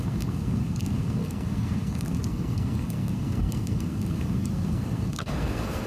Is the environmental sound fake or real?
fake